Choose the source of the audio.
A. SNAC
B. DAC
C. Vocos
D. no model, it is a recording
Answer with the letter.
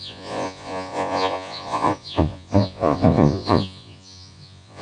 C